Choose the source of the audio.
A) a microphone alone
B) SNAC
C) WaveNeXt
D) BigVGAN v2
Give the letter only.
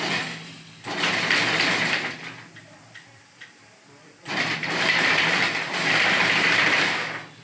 D